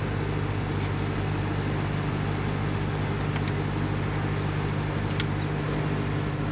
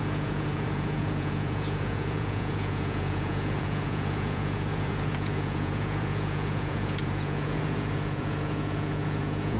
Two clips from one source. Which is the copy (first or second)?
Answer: second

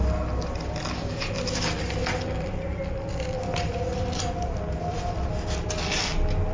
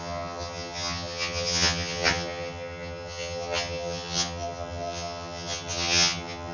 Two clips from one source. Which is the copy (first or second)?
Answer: second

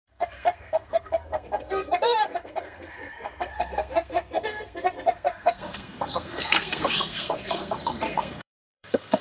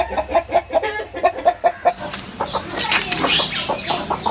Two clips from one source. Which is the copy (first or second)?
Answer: first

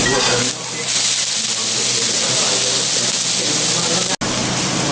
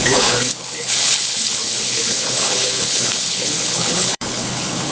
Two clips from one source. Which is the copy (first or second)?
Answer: second